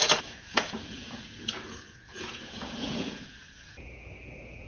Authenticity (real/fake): fake